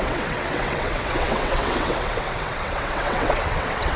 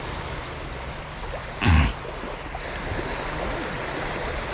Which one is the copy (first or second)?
first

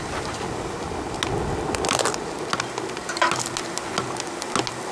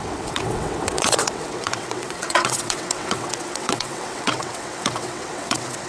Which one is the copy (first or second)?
second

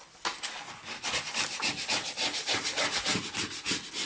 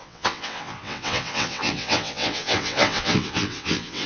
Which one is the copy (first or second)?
second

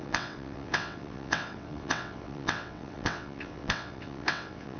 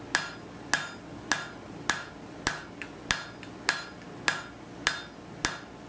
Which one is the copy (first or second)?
first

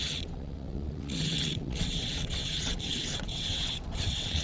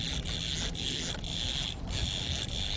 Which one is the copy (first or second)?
first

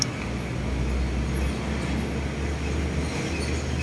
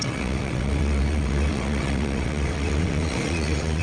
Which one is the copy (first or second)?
second